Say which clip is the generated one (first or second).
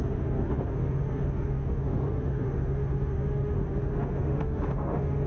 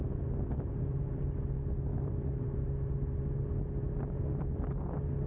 first